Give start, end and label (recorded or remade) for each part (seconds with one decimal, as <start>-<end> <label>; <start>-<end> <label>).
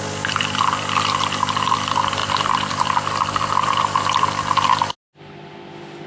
0.0-6.1 recorded